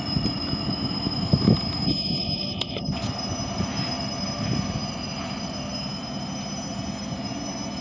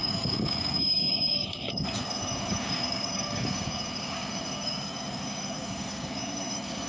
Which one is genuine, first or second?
first